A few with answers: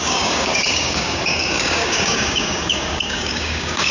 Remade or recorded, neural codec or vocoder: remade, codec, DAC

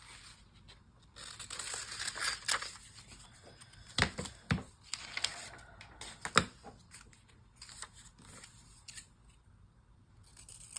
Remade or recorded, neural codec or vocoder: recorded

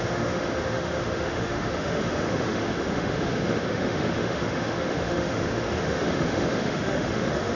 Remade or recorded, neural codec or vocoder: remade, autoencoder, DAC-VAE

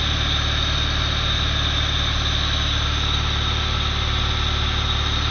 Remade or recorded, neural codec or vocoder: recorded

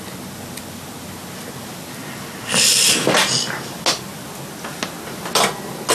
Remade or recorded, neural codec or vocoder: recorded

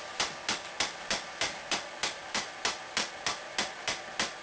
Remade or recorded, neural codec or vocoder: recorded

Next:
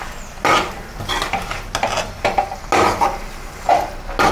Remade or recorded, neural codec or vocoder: recorded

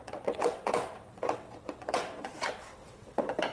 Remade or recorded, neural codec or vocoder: remade, vocoder, WaveNeXt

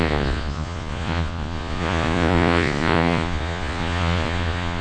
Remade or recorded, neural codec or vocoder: remade, vocoder, Vocos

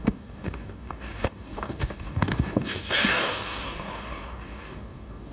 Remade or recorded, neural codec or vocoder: remade, codec, DAC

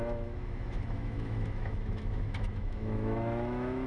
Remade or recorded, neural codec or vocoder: remade, autoencoder, DAC-VAE